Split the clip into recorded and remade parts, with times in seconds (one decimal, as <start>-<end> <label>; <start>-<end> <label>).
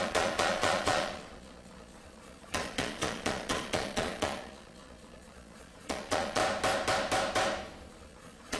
0.0-6.4 remade; 6.4-7.9 recorded; 7.9-8.6 remade